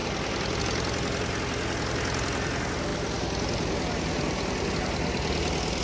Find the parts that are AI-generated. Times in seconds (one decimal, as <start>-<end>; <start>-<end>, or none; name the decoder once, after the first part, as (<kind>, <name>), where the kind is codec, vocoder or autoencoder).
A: none